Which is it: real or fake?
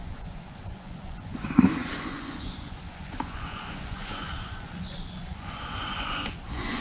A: fake